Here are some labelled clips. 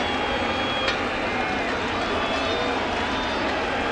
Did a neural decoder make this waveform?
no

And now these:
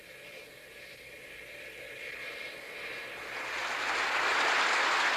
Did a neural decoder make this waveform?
no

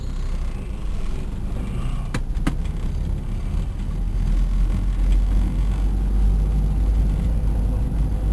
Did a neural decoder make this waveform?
no